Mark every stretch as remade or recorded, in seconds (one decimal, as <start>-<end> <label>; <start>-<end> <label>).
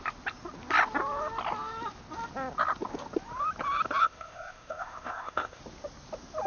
0.0-4.0 recorded; 4.0-5.6 remade; 5.6-6.5 recorded